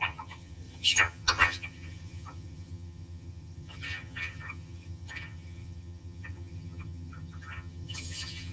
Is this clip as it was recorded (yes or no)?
no